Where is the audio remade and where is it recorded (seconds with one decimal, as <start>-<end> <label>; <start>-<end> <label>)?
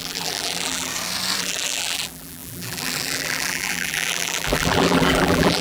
0.0-0.9 remade; 0.9-1.4 recorded; 1.4-5.6 remade